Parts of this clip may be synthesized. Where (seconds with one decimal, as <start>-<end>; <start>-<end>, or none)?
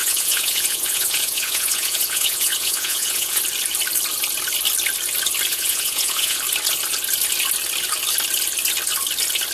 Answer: 0.0-3.4; 5.5-6.4